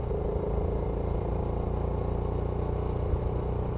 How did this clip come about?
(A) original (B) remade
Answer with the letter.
A